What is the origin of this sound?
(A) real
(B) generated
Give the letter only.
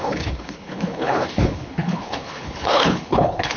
B